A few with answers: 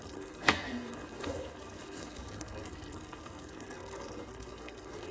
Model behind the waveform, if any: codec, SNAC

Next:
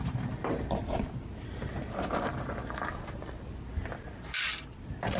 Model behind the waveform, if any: none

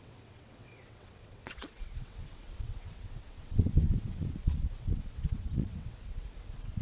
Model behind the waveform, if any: vocoder, WaveNeXt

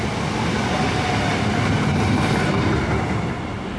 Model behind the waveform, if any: none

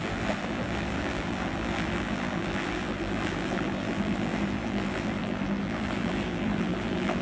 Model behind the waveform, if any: vocoder, BigVGAN v2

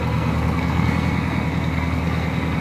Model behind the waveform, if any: codec, SNAC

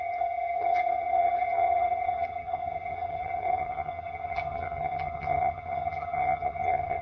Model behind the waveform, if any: vocoder, HiFi-GAN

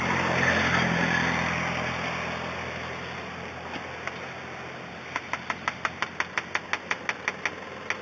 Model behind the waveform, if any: none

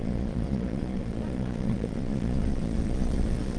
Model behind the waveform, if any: vocoder, Vocos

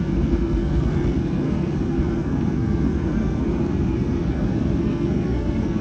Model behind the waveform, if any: codec, SNAC